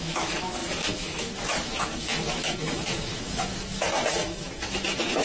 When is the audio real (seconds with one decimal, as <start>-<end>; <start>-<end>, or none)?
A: none